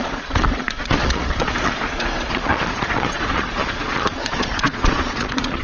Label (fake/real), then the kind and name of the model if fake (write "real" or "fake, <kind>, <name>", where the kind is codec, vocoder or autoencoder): fake, vocoder, Vocos